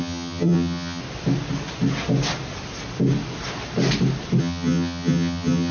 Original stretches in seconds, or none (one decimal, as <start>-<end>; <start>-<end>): 1.0-4.4